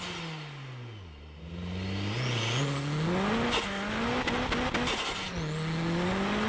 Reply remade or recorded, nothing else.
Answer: recorded